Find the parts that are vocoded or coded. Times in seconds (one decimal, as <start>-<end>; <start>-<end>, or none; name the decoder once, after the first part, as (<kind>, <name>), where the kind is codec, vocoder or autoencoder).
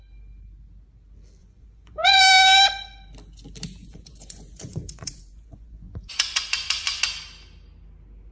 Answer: 1.4-2.2 (vocoder, Vocos); 3.8-7.0